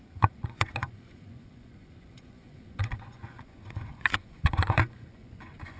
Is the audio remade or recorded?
remade